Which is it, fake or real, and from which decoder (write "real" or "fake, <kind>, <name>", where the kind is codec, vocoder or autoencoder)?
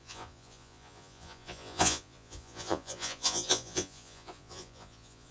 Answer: fake, vocoder, Vocos